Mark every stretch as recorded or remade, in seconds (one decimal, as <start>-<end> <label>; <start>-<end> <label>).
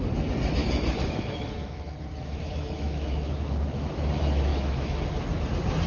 0.0-0.6 recorded; 0.6-4.1 remade; 4.1-4.5 recorded; 4.5-5.0 remade; 5.0-5.9 recorded